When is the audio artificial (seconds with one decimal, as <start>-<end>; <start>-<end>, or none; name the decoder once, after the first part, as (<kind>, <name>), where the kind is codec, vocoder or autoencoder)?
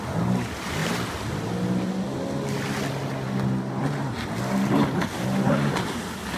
none